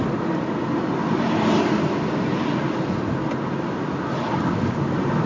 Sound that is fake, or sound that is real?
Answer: real